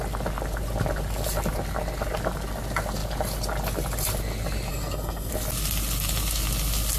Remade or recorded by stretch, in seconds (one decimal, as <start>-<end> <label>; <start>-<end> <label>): 0.0-4.7 recorded; 4.7-5.3 remade; 5.3-7.0 recorded